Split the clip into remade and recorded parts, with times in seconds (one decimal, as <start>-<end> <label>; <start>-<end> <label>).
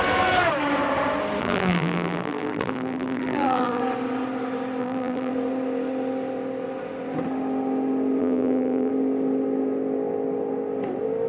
0.0-1.4 recorded; 1.4-3.8 remade; 3.8-4.8 recorded; 4.8-5.3 remade; 5.3-8.2 recorded; 8.2-8.9 remade; 8.9-11.3 recorded